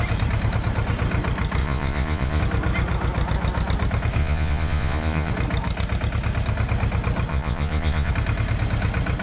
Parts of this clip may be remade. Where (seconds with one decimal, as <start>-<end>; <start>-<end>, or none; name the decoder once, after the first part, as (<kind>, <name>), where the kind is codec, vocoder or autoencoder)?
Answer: 1.6-2.4 (vocoder, Vocos); 4.2-5.3; 7.3-8.1